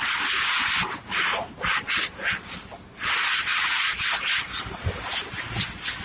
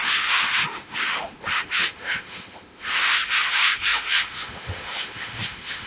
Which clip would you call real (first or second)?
first